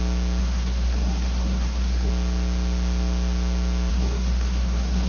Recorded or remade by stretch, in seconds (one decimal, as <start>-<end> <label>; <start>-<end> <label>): 0.0-0.4 recorded; 0.4-2.1 remade; 2.1-3.9 recorded; 3.9-5.1 remade